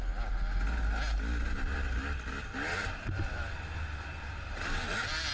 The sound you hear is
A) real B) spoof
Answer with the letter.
A